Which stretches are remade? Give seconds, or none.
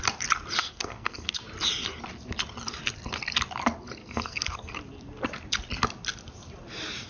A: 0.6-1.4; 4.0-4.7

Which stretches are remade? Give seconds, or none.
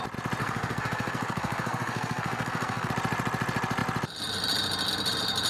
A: 0.4-2.9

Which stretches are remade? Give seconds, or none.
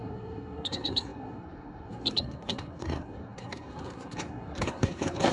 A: 0.0-5.3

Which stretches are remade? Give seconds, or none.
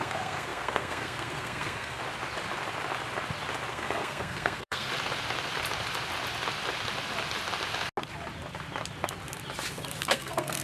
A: 0.0-2.0; 3.7-4.9; 10.0-10.6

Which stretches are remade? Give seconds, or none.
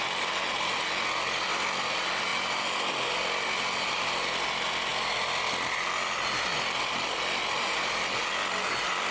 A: none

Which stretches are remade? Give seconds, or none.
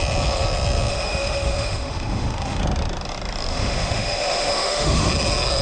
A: 0.9-2.6; 3.5-5.1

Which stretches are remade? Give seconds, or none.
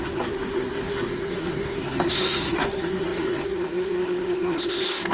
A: 0.0-5.1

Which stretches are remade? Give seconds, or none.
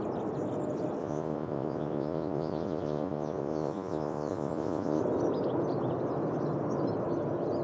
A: 1.0-5.0